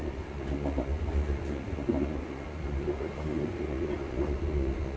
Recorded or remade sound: remade